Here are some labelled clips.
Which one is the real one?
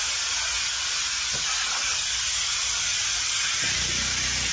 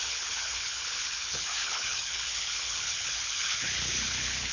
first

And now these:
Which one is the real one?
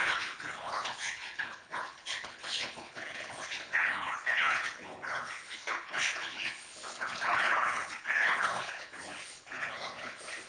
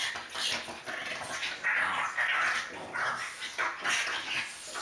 second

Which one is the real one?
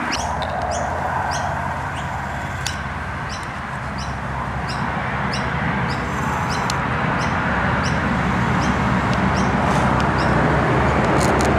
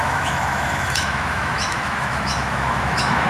first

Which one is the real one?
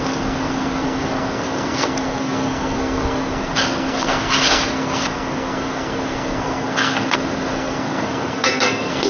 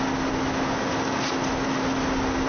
second